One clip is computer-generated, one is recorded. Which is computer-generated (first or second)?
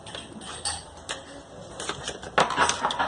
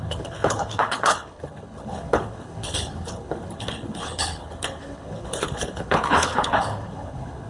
second